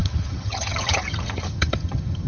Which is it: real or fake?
fake